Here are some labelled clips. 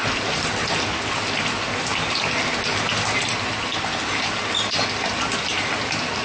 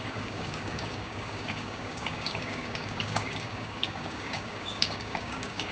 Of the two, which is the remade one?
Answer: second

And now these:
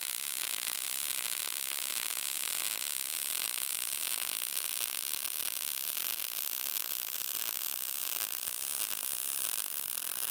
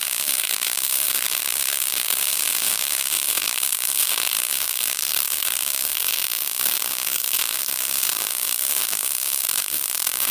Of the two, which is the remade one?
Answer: second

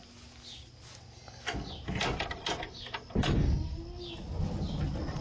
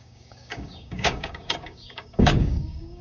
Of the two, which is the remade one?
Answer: second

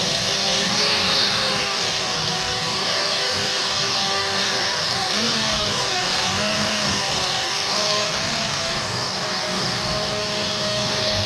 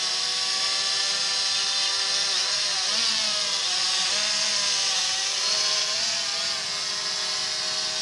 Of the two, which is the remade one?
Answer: first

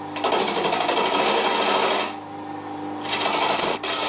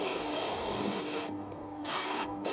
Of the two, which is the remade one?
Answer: second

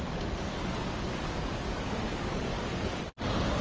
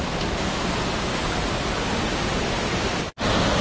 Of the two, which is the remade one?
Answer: first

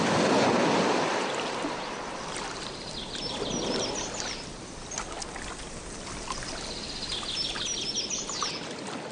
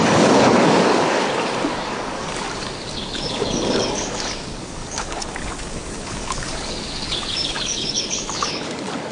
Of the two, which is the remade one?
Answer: second